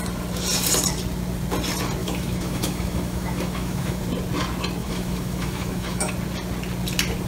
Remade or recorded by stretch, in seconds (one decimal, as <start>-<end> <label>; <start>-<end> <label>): 0.0-2.0 recorded; 2.0-4.0 remade; 4.0-4.8 recorded; 4.8-6.1 remade; 6.1-7.3 recorded